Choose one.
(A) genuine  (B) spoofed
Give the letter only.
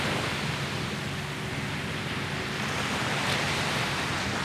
A